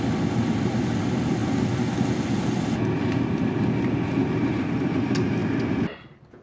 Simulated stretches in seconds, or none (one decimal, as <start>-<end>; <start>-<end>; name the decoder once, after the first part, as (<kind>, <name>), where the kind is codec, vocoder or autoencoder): none